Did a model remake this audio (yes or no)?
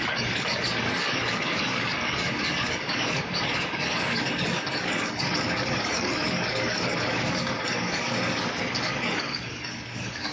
yes